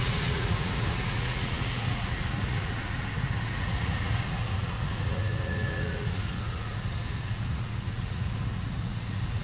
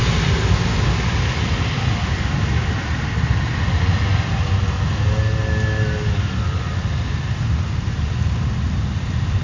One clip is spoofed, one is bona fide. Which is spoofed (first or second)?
first